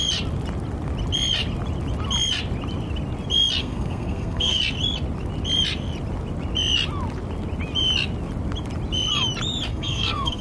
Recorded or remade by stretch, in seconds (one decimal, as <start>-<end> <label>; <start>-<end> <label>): 0.0-3.6 recorded; 3.6-4.6 remade; 4.6-9.7 recorded; 9.7-10.4 remade